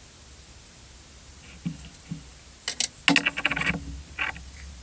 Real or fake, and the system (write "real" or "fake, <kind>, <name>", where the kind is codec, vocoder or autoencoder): real